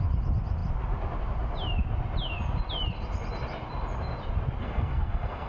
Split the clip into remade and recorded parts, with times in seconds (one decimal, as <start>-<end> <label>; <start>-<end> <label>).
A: 0.0-4.6 recorded; 4.6-5.5 remade